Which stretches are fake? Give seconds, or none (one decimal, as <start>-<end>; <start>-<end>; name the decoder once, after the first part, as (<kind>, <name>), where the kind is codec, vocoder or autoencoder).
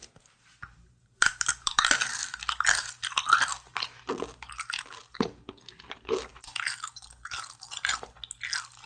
0.0-2.4 (vocoder, BigVGAN v2)